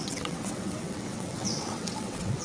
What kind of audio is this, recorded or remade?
remade